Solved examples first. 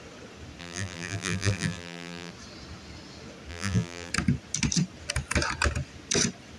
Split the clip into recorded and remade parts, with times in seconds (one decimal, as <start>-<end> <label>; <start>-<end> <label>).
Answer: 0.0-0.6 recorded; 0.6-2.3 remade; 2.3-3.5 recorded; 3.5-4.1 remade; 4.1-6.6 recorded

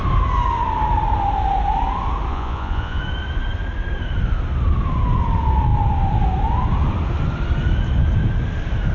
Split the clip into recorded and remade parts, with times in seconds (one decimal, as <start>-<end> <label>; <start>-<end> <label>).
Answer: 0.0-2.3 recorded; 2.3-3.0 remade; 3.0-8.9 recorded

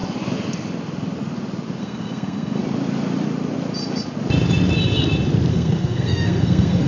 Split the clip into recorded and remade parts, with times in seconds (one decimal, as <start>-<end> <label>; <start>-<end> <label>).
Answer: 0.0-1.8 recorded; 1.8-2.6 remade; 2.6-5.5 recorded; 5.5-6.9 remade

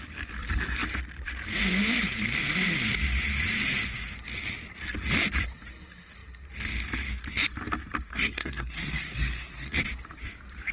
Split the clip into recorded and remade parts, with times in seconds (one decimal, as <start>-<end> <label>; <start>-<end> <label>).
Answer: 0.0-8.1 recorded; 8.1-9.8 remade; 9.8-10.7 recorded

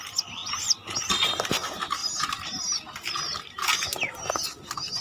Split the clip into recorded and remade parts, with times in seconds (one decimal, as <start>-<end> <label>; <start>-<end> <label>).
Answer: 0.0-5.0 recorded

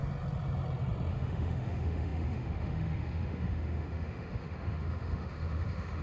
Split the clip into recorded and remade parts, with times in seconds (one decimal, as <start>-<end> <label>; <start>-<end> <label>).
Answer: 0.0-1.1 recorded; 1.1-6.0 remade